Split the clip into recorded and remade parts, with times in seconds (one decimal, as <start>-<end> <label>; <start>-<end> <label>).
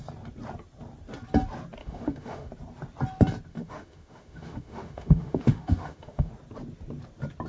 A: 0.0-1.8 recorded; 1.8-2.5 remade; 2.5-3.5 recorded; 3.5-6.3 remade; 6.3-7.5 recorded